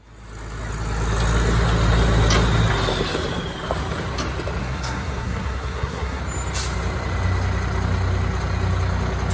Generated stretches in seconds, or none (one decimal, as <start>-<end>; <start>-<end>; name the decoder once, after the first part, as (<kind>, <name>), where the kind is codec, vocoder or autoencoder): 4.6-6.2 (codec, SNAC)